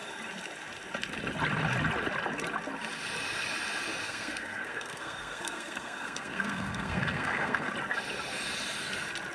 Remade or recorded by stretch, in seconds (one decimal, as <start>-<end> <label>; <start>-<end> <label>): 0.0-4.0 recorded; 4.0-7.7 remade; 7.7-9.3 recorded